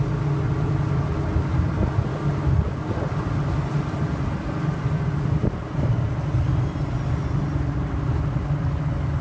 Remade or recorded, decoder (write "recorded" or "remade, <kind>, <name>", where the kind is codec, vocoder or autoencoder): recorded